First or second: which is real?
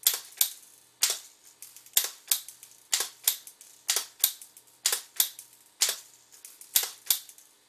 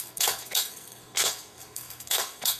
first